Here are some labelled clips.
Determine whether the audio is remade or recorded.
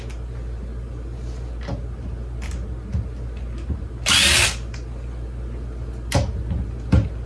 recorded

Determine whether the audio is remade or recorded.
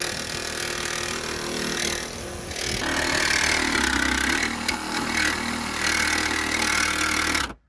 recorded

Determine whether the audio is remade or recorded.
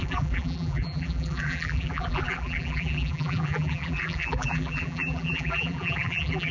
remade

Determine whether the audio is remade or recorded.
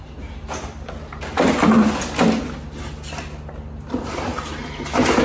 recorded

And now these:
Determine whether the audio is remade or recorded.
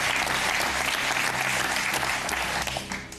recorded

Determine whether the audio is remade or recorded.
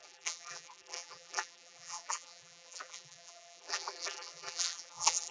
remade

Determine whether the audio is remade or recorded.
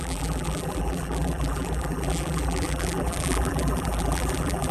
remade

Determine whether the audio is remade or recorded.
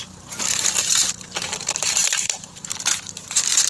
remade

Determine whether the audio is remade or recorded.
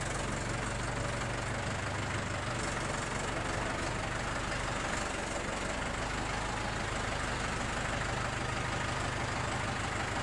recorded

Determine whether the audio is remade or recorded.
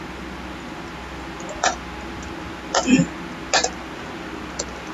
recorded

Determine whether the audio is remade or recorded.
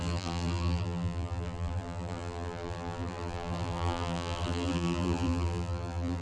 remade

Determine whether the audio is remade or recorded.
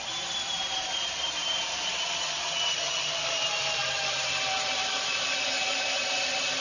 remade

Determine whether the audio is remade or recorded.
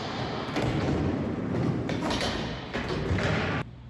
remade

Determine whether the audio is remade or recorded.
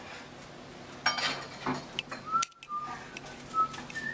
recorded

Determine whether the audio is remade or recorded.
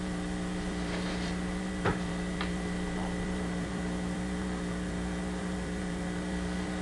remade